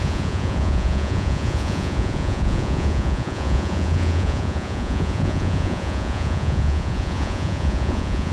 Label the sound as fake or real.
fake